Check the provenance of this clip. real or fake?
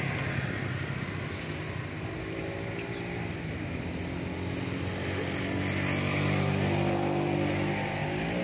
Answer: real